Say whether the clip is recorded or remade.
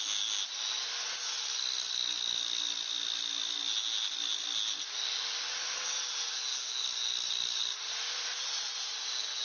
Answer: recorded